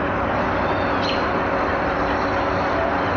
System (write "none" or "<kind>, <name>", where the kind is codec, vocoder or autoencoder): none